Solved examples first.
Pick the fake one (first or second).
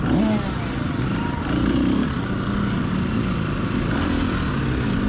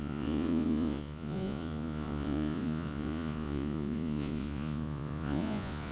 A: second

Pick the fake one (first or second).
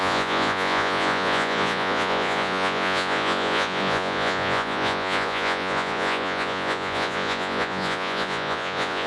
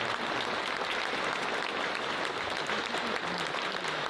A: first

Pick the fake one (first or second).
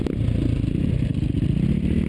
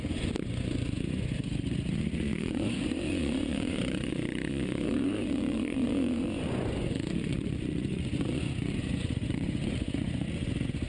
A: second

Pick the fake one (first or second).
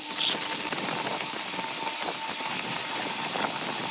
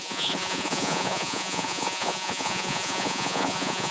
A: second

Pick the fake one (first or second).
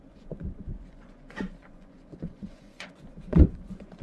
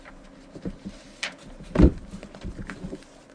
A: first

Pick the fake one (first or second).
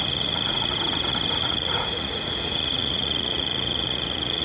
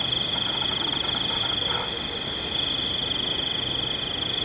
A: first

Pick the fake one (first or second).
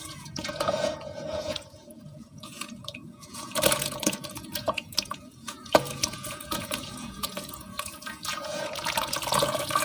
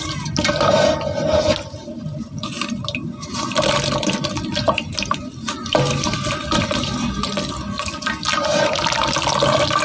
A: first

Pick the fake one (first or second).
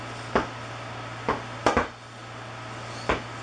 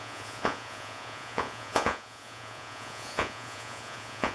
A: second